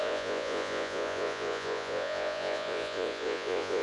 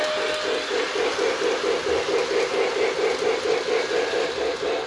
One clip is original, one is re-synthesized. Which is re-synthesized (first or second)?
first